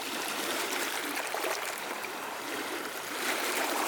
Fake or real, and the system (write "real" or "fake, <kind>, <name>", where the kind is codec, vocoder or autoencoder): fake, vocoder, BigVGAN v2